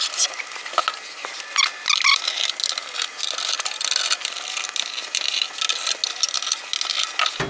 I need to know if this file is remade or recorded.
recorded